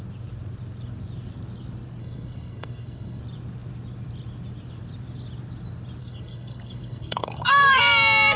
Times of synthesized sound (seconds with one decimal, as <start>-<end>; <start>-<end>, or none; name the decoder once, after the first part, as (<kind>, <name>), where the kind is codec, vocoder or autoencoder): 2.0-3.2 (codec, SNAC); 6.0-7.8